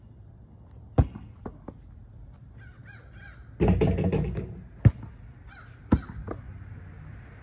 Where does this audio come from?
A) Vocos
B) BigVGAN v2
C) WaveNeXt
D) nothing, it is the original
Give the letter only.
D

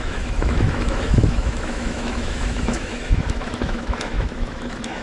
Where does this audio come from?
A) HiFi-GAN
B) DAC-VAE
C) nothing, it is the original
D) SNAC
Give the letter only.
B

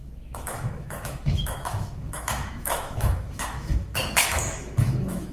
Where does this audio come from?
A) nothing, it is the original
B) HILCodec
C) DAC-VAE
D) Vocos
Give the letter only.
C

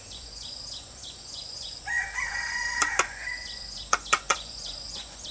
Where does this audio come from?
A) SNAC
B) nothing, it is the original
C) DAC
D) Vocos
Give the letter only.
D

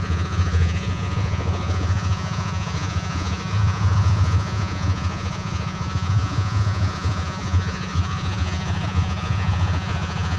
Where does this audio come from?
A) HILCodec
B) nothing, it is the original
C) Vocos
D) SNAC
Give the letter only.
C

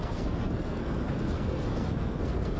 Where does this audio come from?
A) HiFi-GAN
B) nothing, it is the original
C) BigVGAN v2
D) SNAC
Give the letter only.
D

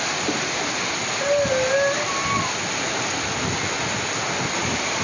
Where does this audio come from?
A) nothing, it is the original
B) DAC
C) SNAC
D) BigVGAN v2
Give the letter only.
A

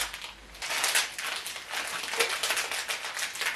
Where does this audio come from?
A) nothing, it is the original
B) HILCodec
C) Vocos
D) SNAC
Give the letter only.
A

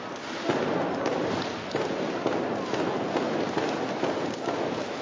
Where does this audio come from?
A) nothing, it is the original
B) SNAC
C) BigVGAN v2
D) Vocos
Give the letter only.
A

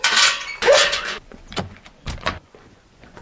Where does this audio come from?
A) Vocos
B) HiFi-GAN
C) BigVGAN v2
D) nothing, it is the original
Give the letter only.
A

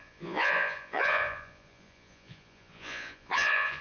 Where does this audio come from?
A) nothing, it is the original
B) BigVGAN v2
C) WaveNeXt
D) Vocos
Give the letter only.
D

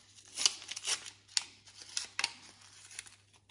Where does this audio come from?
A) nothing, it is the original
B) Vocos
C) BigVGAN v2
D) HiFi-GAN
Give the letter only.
A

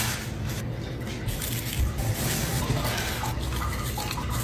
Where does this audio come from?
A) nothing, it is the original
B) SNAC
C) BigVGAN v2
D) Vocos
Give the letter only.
A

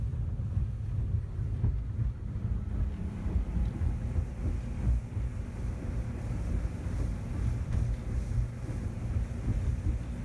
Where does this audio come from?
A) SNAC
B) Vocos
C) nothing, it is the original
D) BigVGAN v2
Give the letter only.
C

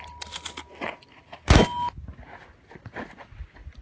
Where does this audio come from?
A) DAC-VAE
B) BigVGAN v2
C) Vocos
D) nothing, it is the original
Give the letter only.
D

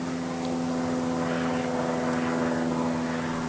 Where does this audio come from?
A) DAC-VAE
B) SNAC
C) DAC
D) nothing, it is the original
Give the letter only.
D